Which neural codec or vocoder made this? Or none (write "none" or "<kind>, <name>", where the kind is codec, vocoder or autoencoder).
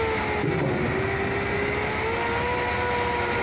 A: none